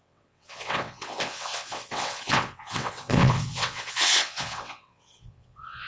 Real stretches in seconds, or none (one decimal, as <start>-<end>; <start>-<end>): none